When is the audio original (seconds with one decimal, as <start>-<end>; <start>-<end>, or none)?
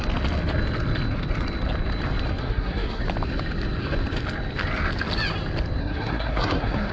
0.0-2.4; 3.0-5.8